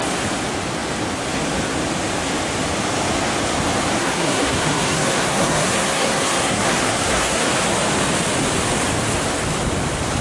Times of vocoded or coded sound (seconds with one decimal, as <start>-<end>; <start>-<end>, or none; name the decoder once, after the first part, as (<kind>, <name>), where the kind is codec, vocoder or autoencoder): 4.0-7.5 (codec, SNAC)